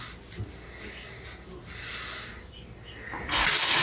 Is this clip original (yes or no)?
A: yes